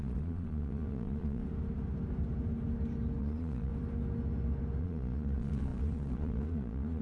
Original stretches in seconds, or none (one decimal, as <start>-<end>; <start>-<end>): 1.4-3.2; 3.7-4.8